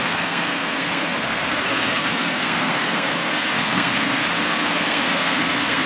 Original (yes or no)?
no